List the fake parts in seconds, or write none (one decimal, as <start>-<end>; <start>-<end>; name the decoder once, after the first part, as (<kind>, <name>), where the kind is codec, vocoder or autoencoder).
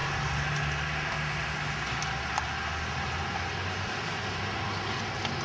none